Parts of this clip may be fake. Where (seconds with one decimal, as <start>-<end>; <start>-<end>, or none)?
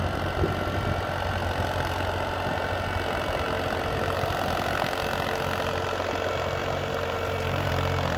6.6-7.7